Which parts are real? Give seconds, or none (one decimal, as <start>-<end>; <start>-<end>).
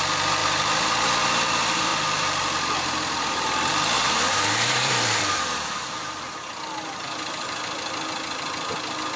none